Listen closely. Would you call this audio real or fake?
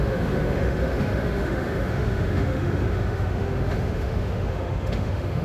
fake